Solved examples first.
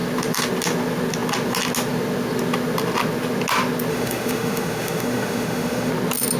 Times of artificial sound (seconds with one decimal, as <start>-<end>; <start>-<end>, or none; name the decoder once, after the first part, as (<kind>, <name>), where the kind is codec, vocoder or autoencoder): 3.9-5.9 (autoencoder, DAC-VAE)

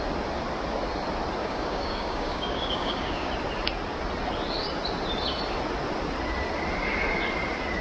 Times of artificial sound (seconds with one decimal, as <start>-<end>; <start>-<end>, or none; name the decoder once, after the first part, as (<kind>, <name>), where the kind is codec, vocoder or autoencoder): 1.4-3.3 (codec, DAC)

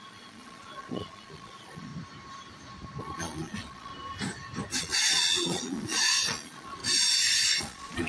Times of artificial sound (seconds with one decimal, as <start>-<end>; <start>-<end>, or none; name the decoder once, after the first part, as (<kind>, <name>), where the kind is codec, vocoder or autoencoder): 0.0-1.9 (vocoder, Vocos); 3.0-3.9; 4.8-6.8; 7.6-8.1